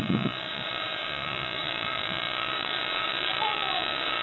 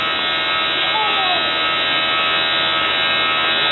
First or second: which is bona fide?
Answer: second